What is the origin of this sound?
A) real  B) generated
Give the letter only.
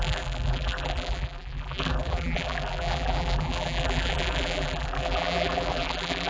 B